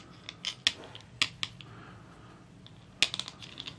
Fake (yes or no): no